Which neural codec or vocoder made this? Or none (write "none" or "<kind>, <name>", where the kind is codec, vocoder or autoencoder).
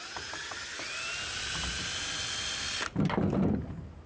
none